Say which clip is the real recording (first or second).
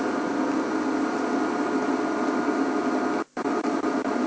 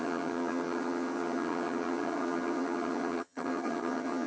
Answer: first